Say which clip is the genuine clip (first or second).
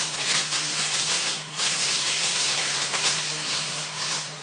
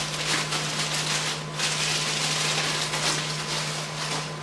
second